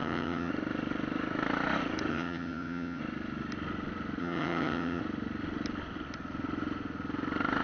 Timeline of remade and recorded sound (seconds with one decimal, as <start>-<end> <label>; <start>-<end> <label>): 0.0-0.5 remade; 0.5-2.1 recorded; 2.1-3.0 remade; 3.0-4.2 recorded; 4.2-5.0 remade; 5.0-7.6 recorded